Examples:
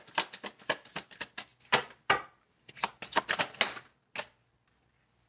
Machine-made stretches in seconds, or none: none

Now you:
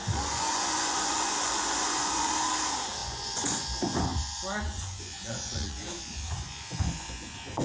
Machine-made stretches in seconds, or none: 0.0-2.3 (vocoder, Vocos); 3.0-7.6